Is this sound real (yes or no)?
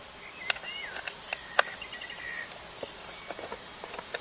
yes